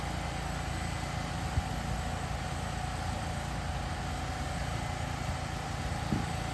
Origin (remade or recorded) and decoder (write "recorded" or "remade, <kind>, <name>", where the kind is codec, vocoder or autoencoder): recorded